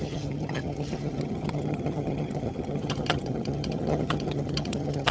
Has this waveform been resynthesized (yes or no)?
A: yes